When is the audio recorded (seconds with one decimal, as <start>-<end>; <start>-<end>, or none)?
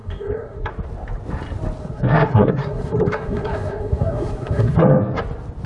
0.7-1.8; 5.2-5.7